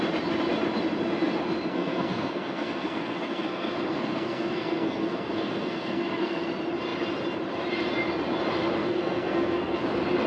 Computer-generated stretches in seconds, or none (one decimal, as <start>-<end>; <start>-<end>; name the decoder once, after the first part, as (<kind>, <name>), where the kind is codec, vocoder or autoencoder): 1.7-6.5 (codec, SNAC); 8.8-9.8